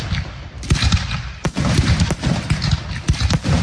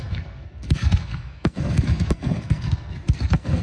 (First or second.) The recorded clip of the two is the first